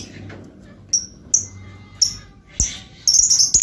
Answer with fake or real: real